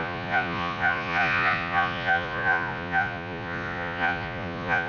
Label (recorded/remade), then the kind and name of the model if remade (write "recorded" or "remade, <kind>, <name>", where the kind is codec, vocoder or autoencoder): remade, vocoder, Vocos